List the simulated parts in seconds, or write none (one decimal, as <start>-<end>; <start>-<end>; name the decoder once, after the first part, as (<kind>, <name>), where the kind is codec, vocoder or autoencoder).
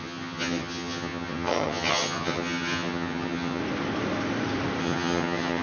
0.0-3.6 (vocoder, HiFi-GAN); 4.8-5.6